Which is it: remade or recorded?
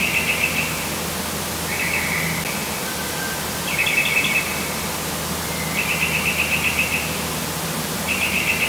recorded